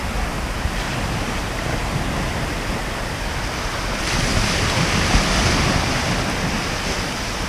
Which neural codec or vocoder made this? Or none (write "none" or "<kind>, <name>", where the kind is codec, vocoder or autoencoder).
none